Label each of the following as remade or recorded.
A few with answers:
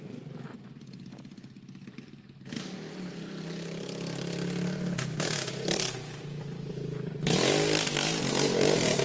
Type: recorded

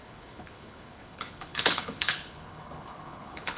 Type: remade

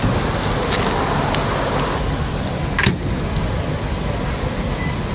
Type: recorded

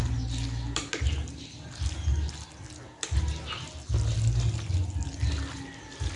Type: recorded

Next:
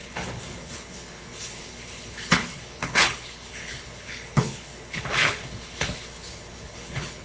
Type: remade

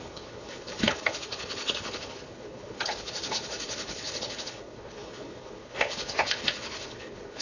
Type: remade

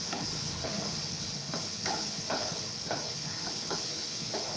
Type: remade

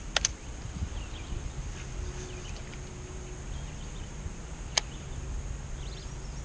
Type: recorded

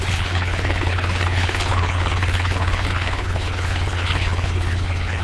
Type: remade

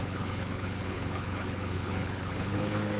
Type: remade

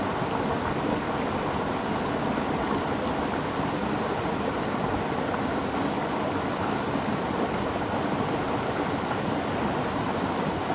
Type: recorded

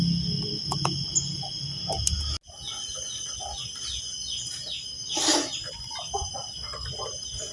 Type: recorded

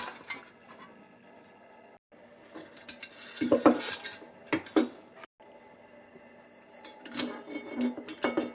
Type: recorded